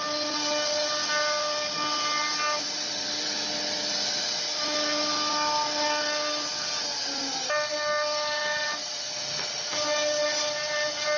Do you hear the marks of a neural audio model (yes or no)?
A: no